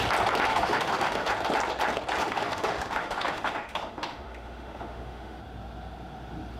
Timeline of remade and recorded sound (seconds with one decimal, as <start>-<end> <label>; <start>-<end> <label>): 0.0-0.5 recorded; 0.5-1.3 remade; 1.3-2.2 recorded; 2.2-5.4 remade; 5.4-6.6 recorded